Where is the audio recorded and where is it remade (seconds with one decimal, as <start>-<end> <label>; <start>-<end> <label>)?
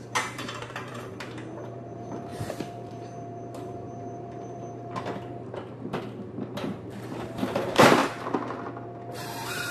0.0-8.0 remade; 8.0-9.1 recorded; 9.1-9.7 remade